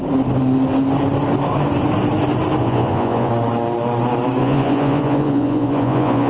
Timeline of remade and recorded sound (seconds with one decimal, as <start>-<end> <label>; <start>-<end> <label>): 0.0-2.6 recorded; 2.6-3.3 remade; 3.3-4.4 recorded; 4.4-6.3 remade

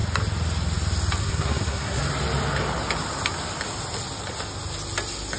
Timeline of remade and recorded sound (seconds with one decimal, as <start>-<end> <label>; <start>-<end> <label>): 0.0-1.2 recorded; 1.2-2.0 remade; 2.0-5.4 recorded

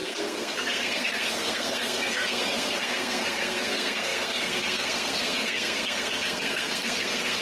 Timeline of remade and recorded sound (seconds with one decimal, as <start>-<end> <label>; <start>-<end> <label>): 0.0-7.4 remade

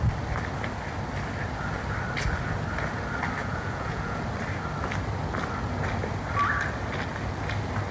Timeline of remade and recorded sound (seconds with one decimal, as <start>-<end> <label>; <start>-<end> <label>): 0.0-3.4 recorded; 3.4-4.2 remade; 4.2-7.9 recorded

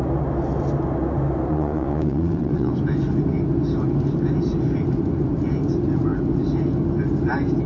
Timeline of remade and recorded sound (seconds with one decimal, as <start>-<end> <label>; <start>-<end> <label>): 0.0-1.5 recorded; 1.5-2.7 remade; 2.7-7.7 recorded

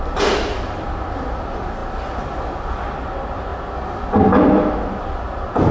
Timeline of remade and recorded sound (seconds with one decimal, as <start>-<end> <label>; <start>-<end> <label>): 0.0-5.7 recorded

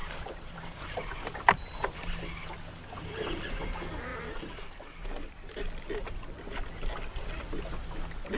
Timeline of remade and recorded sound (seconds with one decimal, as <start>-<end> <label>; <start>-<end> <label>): 0.0-2.2 remade; 2.2-8.4 recorded

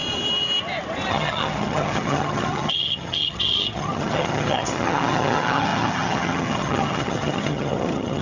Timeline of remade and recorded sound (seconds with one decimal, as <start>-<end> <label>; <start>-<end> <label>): 0.0-1.1 recorded; 1.1-8.2 remade